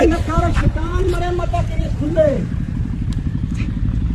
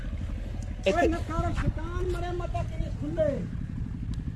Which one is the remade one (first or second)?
first